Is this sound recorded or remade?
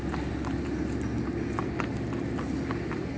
recorded